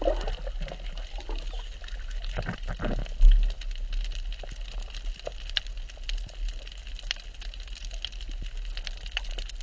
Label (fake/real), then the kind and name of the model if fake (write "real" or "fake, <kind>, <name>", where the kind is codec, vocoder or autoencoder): real